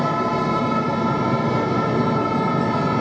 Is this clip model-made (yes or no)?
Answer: no